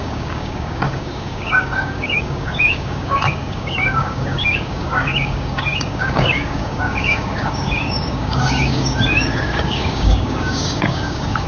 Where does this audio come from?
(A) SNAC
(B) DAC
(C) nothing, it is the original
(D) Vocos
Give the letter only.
B